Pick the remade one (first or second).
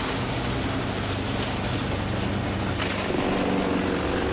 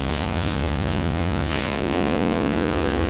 second